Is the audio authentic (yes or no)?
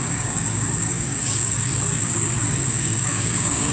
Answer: no